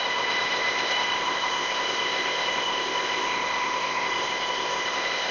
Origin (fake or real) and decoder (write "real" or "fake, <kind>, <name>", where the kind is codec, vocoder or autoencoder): fake, codec, ZipCodec